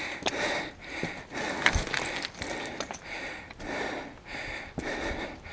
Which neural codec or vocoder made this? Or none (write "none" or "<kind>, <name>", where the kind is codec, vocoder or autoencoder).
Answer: none